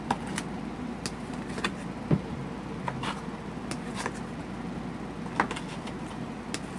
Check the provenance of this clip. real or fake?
real